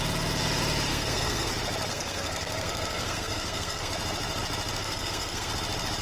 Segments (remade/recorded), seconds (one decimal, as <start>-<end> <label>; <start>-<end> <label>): 0.0-0.9 recorded; 0.9-1.5 remade; 1.5-1.9 recorded; 1.9-3.9 remade; 3.9-4.8 recorded; 4.8-5.5 remade; 5.5-6.0 recorded